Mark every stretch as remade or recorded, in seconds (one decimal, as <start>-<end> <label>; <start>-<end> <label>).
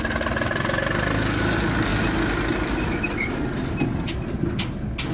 0.0-5.1 recorded